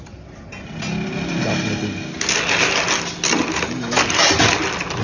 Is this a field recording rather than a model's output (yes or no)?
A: yes